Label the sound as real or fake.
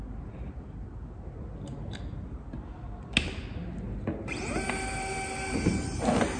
real